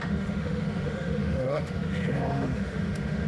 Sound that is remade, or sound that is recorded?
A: remade